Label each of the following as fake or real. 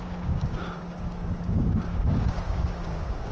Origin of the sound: fake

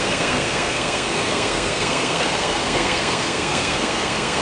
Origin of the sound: fake